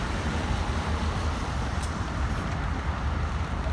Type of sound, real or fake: fake